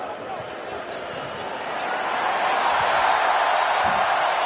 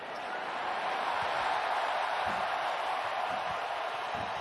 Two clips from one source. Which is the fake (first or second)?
second